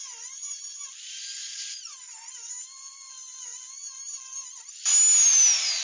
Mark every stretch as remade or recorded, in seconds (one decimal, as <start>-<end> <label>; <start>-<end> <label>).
0.0-5.8 recorded